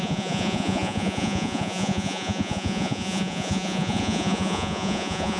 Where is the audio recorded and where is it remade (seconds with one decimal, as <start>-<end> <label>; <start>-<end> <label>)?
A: 0.0-5.4 remade